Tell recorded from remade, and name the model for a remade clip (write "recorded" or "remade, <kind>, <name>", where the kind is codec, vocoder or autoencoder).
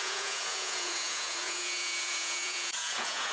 remade, vocoder, Vocos